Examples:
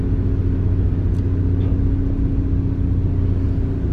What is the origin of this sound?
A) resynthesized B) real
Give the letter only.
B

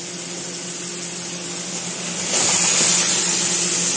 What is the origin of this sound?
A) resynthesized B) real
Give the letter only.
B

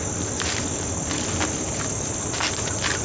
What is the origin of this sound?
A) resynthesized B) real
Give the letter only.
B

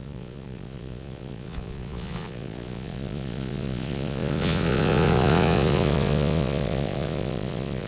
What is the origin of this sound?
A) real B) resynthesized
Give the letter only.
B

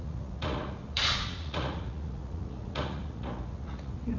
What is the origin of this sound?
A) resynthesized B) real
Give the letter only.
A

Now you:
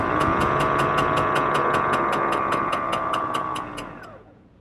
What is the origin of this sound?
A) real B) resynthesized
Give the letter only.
B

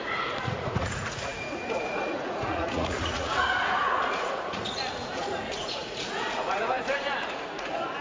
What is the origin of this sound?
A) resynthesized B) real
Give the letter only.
A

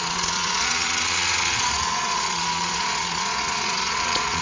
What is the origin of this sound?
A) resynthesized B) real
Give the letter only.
A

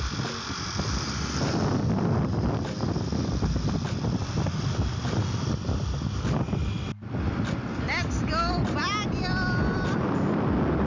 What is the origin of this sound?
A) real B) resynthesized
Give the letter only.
A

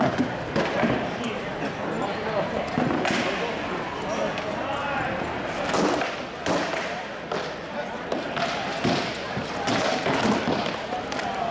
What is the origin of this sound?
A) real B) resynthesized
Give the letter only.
A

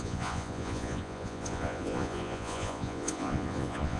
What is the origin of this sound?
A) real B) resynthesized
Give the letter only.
B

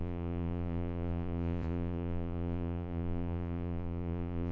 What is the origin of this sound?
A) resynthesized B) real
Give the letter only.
A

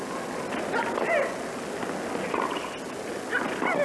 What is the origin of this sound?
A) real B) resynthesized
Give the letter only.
A